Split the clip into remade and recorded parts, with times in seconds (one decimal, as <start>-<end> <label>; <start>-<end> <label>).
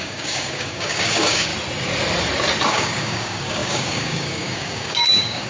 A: 0.0-1.5 remade; 1.5-2.7 recorded; 2.7-5.5 remade